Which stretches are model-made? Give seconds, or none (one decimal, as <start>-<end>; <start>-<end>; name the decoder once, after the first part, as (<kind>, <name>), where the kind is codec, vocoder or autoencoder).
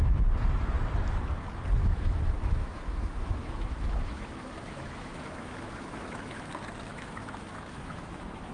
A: 1.8-6.5 (autoencoder, DAC-VAE); 6.9-8.5